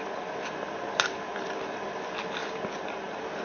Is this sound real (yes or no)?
yes